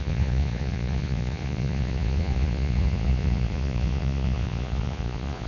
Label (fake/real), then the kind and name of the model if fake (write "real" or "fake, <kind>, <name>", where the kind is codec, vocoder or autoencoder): fake, vocoder, Vocos